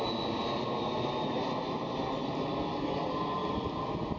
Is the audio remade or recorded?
recorded